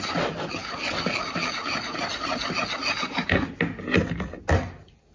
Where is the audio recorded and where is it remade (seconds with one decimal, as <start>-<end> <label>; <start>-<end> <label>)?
0.0-5.1 recorded